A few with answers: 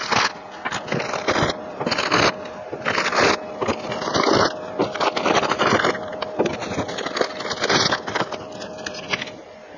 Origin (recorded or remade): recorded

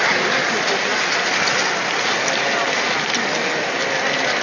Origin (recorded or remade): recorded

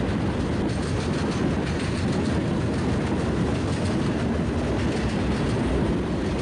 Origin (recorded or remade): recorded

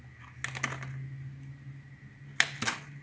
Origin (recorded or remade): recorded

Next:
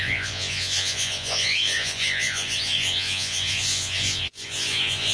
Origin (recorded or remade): remade